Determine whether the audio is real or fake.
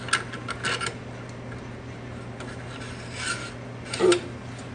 real